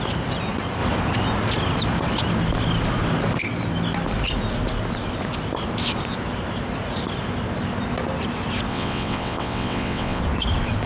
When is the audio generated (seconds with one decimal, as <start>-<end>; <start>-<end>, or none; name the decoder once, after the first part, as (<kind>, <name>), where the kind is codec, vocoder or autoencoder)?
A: 8.7-10.2 (vocoder, WaveNeXt)